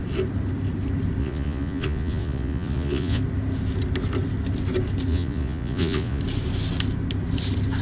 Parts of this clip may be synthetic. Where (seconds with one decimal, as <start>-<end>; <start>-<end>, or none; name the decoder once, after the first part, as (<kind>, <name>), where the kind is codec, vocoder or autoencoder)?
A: 1.2-3.2 (vocoder, Vocos); 5.1-6.2